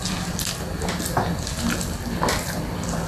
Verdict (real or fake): real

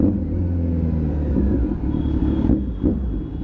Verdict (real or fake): real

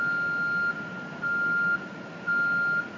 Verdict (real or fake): real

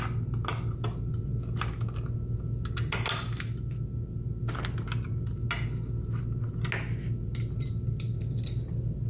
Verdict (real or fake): real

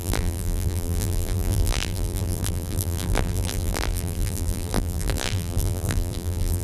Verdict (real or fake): fake